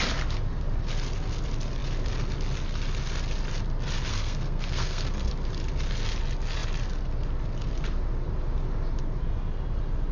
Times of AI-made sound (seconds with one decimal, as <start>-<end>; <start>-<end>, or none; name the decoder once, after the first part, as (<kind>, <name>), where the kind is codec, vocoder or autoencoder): 4.1-5.3 (codec, SNAC)